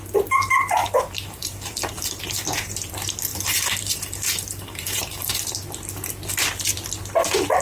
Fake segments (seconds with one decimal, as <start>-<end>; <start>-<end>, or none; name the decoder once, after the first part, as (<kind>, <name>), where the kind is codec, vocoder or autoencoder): 0.8-2.2 (vocoder, BigVGAN v2); 3.3-5.3